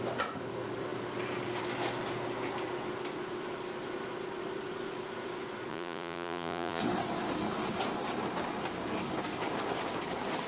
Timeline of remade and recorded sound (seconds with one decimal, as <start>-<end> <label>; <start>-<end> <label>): 0.0-5.7 recorded; 5.7-6.8 remade; 6.8-10.5 recorded